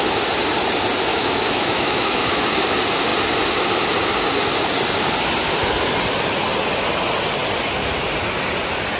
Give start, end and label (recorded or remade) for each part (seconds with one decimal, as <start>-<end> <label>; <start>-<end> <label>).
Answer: 0.0-1.1 recorded; 1.1-2.4 remade; 2.4-9.0 recorded